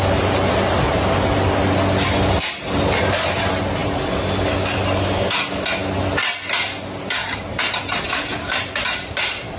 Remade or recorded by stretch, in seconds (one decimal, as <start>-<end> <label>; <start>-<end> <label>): 0.0-7.2 recorded; 7.2-9.6 remade